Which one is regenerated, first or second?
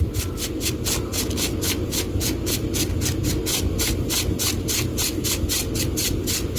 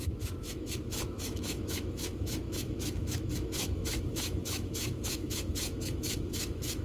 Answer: second